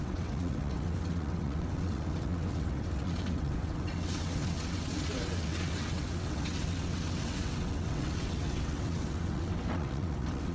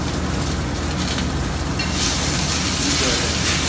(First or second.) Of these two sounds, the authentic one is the second